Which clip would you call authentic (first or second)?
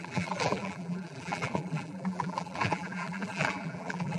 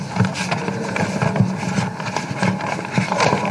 second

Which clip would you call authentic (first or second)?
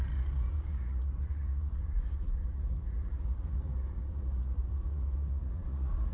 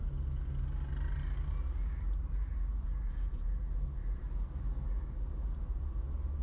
second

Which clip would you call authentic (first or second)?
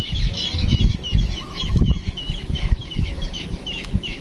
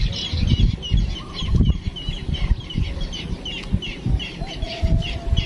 second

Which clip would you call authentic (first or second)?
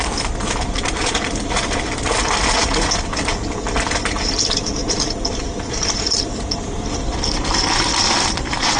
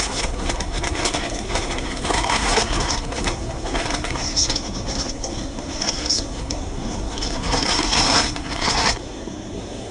first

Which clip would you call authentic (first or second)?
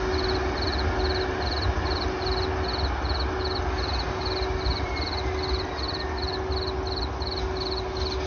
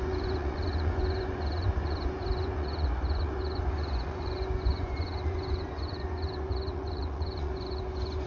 first